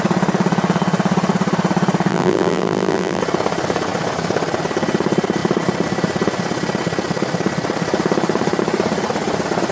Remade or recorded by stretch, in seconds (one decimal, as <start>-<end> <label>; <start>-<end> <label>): 0.0-2.1 recorded; 2.1-3.2 remade; 3.2-9.7 recorded